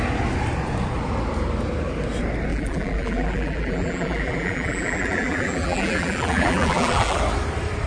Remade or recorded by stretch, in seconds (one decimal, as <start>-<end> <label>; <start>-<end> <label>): 0.0-2.5 recorded; 2.5-7.2 remade; 7.2-7.9 recorded